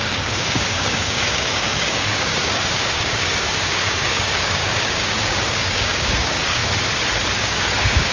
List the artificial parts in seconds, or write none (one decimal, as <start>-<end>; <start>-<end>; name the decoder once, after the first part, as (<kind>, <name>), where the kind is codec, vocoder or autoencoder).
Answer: 0.0-6.6 (codec, DAC); 7.4-8.1